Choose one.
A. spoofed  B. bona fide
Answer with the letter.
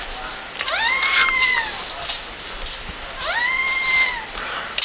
B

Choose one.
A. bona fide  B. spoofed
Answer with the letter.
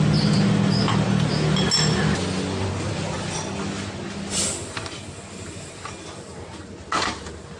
A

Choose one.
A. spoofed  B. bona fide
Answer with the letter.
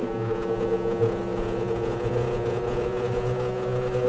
A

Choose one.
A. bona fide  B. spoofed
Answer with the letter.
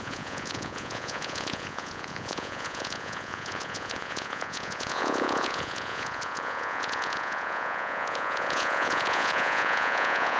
B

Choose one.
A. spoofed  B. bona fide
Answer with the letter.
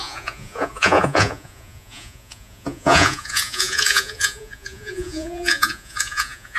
A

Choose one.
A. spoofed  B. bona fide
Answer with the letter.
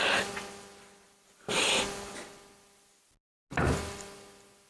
B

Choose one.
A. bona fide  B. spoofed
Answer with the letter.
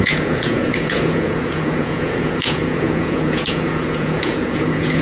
B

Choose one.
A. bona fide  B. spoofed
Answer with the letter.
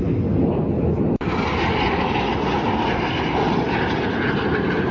A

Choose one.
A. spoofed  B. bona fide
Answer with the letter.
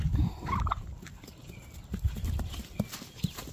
B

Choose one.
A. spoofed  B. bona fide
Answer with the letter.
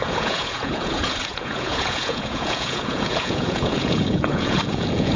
A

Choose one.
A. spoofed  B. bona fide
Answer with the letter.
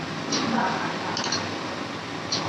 B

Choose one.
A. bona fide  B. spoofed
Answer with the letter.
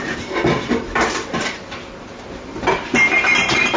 A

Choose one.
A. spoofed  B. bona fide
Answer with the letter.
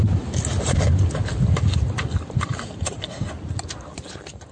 B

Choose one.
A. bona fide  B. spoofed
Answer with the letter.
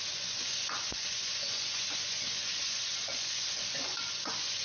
B